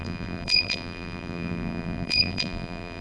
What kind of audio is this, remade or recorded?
remade